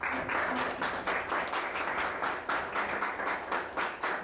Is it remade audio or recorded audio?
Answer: recorded